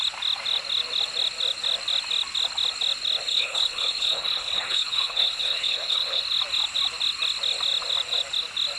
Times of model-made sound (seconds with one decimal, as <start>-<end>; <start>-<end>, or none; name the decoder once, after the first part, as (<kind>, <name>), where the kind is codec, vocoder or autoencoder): 3.3-6.2 (codec, HILCodec)